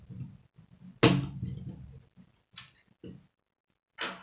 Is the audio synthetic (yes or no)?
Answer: no